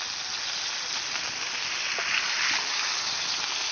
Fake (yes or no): no